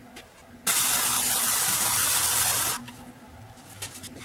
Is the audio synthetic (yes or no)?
no